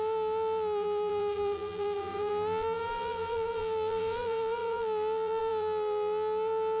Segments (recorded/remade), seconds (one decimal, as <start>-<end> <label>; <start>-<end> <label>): 0.0-6.8 remade